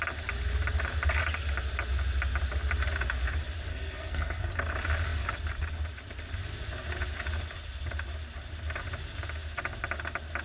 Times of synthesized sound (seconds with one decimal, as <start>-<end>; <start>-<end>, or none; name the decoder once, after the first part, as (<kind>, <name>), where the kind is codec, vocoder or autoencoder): 3.7-4.5 (codec, SNAC)